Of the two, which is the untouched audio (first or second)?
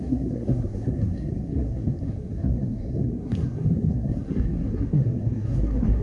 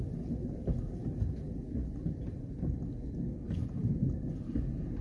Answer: second